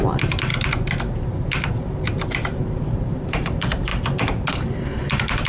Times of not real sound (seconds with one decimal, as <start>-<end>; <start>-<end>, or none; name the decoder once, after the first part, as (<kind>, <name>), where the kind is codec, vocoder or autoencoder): 0.0-0.5 (vocoder, BigVGAN v2); 1.7-3.9; 4.5-5.5